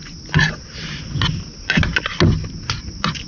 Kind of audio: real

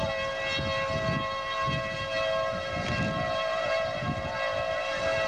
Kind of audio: real